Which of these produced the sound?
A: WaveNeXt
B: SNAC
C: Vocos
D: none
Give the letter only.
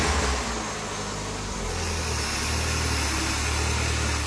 D